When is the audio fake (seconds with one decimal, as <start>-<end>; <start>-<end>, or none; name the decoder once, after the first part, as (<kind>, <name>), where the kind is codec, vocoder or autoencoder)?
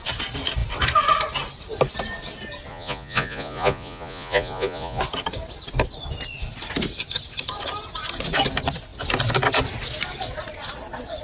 2.7-5.0 (vocoder, Vocos)